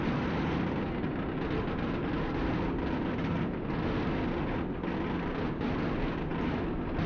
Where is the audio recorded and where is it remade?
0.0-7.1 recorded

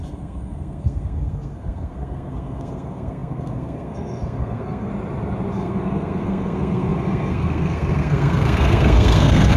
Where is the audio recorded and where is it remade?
0.0-4.9 remade; 4.9-5.5 recorded; 5.5-9.6 remade

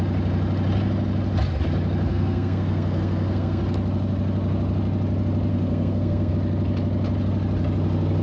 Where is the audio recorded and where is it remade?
0.0-2.1 recorded; 2.1-3.6 remade; 3.6-5.5 recorded; 5.5-6.3 remade; 6.3-8.2 recorded

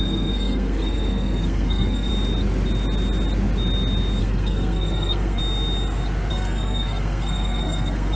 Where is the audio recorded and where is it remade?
0.0-2.1 remade; 2.1-4.2 recorded; 4.2-5.4 remade; 5.4-6.3 recorded; 6.3-8.2 remade

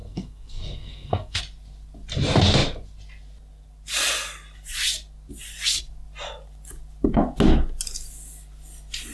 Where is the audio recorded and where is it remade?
0.0-1.4 remade; 1.4-9.1 recorded

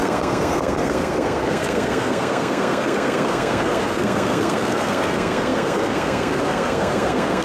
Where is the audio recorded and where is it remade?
0.0-7.4 remade